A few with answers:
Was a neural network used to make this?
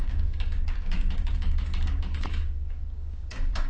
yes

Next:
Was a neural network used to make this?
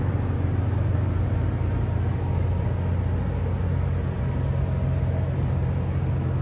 no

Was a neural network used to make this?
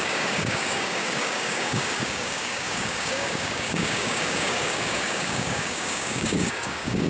yes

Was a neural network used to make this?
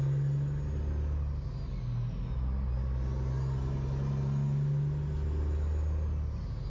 no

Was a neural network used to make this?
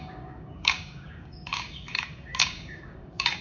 yes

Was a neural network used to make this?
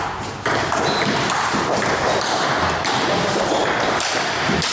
no